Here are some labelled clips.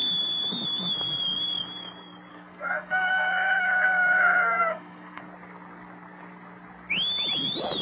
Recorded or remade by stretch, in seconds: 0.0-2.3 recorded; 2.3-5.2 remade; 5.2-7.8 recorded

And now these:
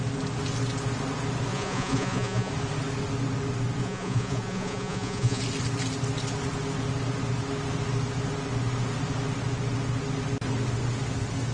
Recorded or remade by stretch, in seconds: 0.0-1.5 recorded; 1.5-2.5 remade; 2.5-3.8 recorded; 3.8-5.4 remade; 5.4-11.5 recorded

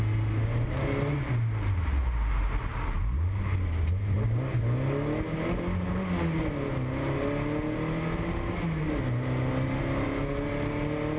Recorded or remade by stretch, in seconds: 0.0-11.2 recorded

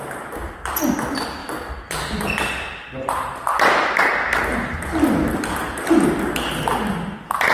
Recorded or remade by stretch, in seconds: 0.0-7.5 recorded

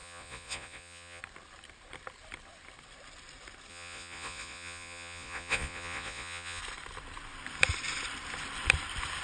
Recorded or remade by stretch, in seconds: 0.0-1.2 remade; 1.2-3.7 recorded; 3.7-6.6 remade; 6.6-9.2 recorded

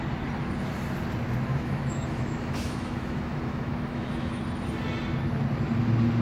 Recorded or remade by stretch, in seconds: 0.0-1.5 recorded; 1.5-4.4 remade; 4.4-6.2 recorded